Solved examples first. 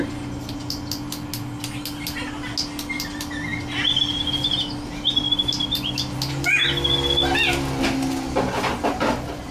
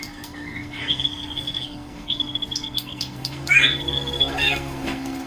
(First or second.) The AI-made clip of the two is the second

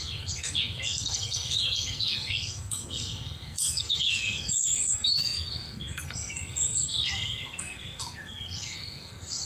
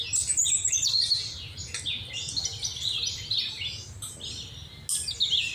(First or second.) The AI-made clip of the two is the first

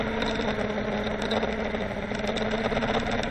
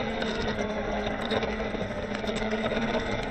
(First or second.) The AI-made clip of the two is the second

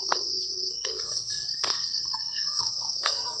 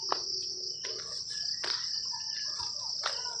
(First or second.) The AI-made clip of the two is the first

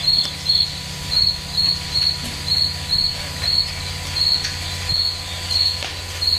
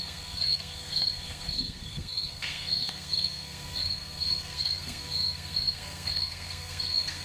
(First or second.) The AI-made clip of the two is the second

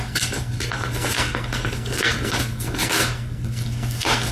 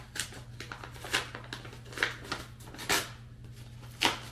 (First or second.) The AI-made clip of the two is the first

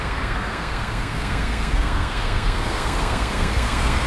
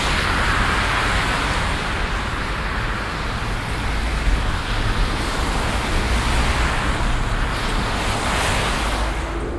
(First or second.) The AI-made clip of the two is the first